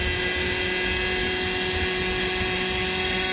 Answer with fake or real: real